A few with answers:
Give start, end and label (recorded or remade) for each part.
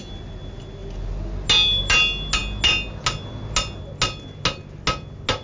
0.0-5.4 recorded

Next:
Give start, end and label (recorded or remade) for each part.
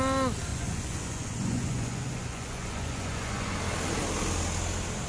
0.0-0.5 recorded; 0.5-3.6 remade; 3.6-5.1 recorded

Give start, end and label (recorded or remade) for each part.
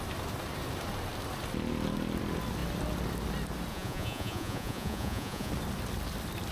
0.0-3.7 recorded; 3.7-5.5 remade; 5.5-6.5 recorded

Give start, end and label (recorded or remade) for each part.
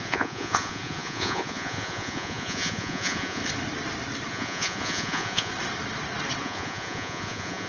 0.0-3.4 remade; 3.4-4.3 recorded; 4.3-5.5 remade; 5.5-6.4 recorded; 6.4-7.7 remade